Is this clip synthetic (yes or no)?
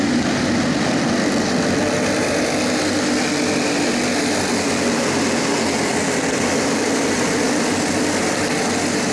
no